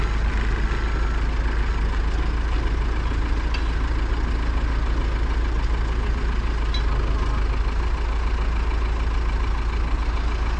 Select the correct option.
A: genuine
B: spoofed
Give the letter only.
A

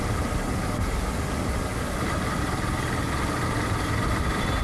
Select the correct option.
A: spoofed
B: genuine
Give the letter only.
B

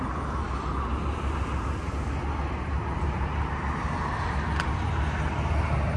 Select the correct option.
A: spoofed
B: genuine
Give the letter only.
B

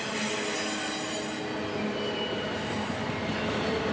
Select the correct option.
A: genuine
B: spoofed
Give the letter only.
A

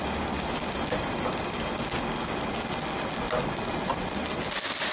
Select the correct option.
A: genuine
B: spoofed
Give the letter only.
A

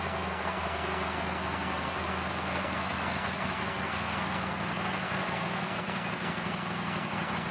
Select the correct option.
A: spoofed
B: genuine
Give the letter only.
A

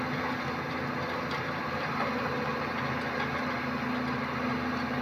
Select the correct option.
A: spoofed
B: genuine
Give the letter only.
B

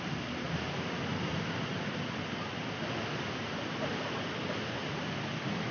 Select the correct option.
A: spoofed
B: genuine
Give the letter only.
B